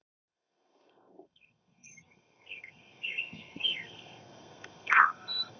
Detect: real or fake fake